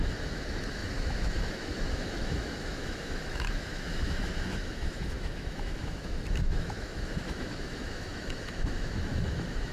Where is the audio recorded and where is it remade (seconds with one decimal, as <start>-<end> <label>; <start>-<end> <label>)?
0.0-9.7 remade